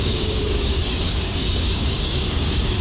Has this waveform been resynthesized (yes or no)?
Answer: yes